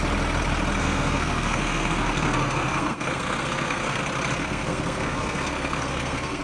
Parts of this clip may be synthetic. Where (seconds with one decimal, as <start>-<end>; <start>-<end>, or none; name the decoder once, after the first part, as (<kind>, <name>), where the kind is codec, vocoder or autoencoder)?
0.8-4.0 (codec, SNAC); 4.4-6.4